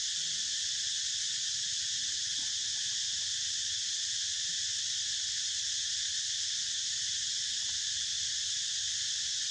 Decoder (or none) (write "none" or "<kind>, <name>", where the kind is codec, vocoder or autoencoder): none